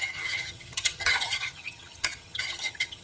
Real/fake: fake